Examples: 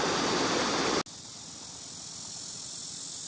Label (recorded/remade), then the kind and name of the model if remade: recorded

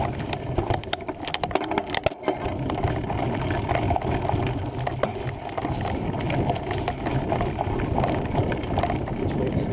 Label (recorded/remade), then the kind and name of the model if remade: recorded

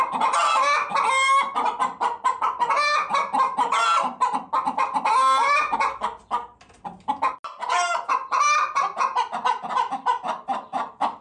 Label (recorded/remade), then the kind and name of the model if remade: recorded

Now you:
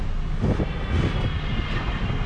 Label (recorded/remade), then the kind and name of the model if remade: recorded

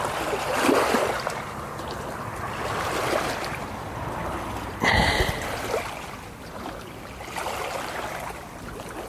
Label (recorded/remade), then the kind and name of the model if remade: recorded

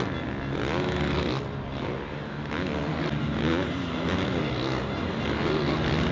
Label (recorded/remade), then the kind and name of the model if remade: recorded